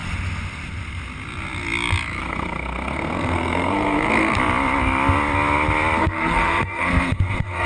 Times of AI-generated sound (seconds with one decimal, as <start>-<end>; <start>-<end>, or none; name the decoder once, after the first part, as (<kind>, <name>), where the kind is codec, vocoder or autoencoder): 2.2-4.4 (codec, SNAC); 6.0-7.7